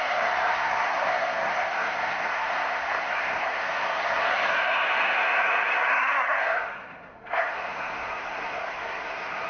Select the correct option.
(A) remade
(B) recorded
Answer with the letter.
A